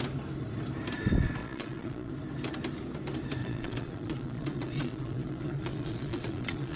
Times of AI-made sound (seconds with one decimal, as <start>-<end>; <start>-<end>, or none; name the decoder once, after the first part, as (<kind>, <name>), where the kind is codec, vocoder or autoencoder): 1.4-2.1 (vocoder, Vocos); 3.4-6.8